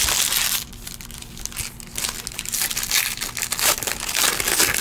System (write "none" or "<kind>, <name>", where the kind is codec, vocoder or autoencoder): none